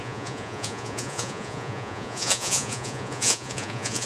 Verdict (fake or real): fake